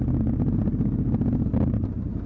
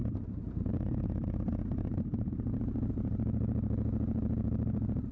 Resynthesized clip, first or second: second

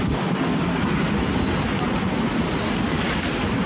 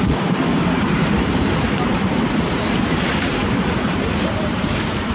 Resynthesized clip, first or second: second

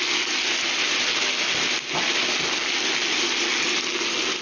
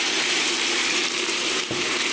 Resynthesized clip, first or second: second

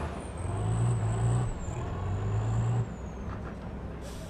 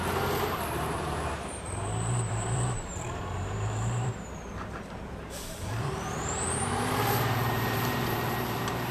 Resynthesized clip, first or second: second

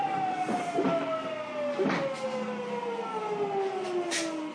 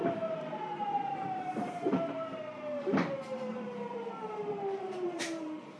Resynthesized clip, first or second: second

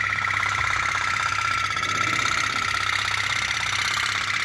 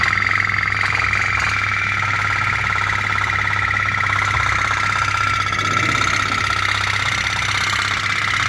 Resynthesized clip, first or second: first